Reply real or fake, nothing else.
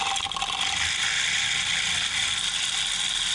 real